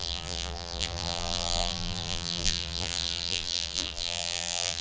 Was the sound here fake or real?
fake